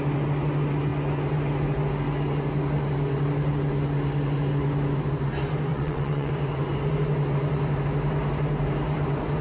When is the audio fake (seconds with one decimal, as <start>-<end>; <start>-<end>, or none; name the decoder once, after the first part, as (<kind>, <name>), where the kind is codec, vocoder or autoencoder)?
5.7-6.3 (vocoder, WaveNeXt)